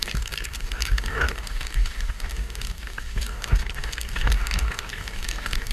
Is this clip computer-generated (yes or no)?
yes